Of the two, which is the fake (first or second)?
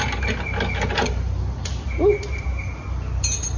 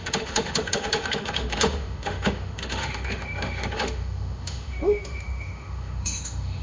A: second